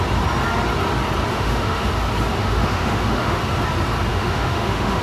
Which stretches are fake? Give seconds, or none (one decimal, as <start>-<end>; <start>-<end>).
1.3-1.9; 2.4-3.4; 4.1-5.0